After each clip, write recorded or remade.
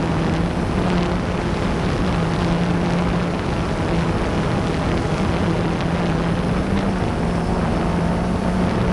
recorded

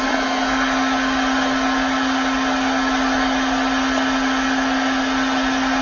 recorded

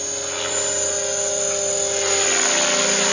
recorded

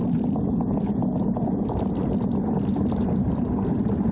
recorded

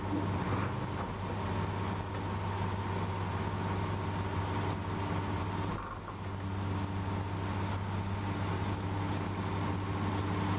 recorded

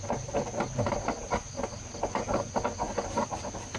recorded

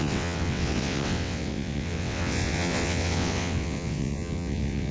remade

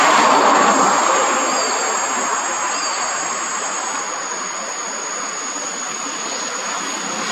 recorded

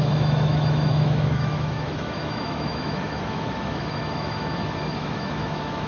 remade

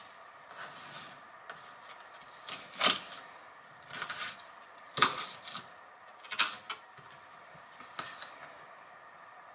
recorded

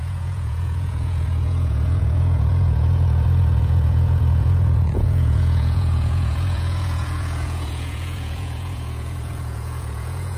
remade